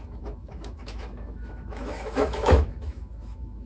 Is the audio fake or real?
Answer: fake